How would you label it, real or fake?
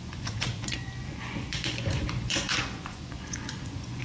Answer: fake